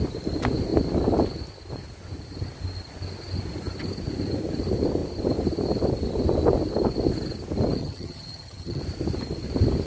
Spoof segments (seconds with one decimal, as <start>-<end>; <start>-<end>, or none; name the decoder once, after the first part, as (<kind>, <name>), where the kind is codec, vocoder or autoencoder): 7.8-8.8 (vocoder, HiFi-GAN)